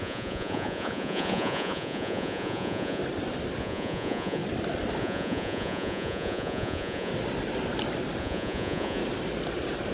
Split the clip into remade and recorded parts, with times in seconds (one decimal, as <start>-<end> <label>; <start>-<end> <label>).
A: 0.0-3.0 remade; 3.0-3.6 recorded; 3.6-4.4 remade; 4.4-5.0 recorded; 5.0-7.1 remade; 7.1-8.2 recorded; 8.2-9.0 remade; 9.0-9.9 recorded